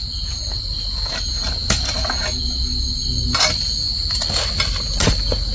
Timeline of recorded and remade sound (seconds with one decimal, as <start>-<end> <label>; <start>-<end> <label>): 0.0-5.5 recorded